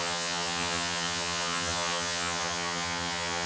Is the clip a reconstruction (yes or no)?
yes